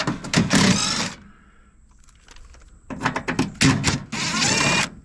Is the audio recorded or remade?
recorded